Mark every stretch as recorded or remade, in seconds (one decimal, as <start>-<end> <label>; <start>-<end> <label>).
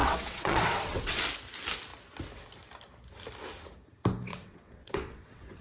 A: 0.0-1.2 remade; 1.2-4.3 recorded; 4.3-5.6 remade